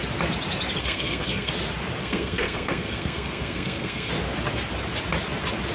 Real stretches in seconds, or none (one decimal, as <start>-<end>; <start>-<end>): 0.0-0.8; 1.5-2.0; 4.1-5.7